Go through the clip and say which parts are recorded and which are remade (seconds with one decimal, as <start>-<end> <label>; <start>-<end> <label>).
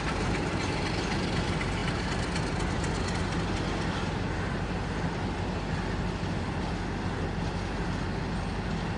0.0-9.0 recorded